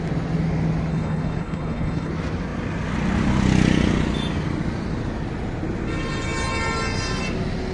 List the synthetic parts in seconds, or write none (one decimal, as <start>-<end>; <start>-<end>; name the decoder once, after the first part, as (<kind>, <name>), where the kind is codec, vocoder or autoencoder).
0.9-2.1 (codec, HILCodec)